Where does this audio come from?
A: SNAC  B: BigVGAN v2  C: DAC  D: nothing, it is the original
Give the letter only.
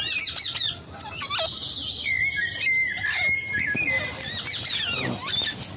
D